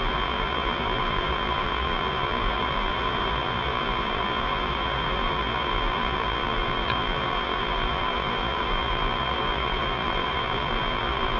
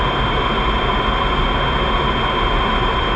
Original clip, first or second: second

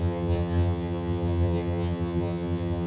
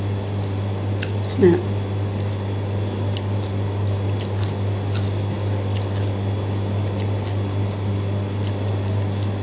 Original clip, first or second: second